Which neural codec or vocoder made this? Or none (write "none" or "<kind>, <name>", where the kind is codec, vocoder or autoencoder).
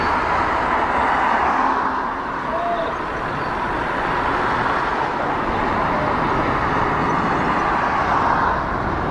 none